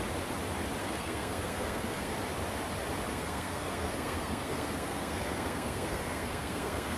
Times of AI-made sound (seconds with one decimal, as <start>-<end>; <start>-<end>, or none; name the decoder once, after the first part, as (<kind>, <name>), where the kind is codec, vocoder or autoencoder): 0.8-2.1 (codec, SNAC); 3.1-7.0